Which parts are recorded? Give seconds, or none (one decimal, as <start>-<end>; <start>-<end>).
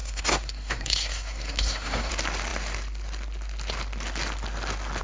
2.1-5.0